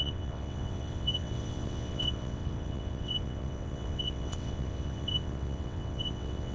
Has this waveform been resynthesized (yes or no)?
yes